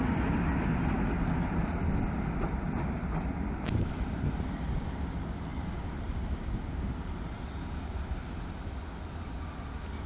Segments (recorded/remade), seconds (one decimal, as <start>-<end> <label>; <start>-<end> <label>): 0.0-10.1 recorded